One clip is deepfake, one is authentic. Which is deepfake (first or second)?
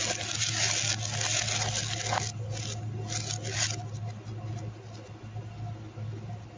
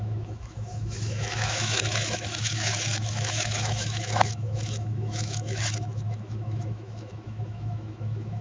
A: second